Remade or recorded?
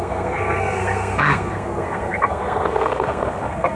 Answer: remade